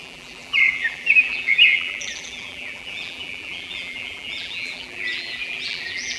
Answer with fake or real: fake